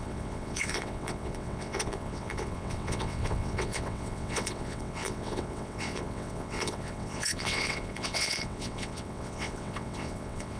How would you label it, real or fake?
fake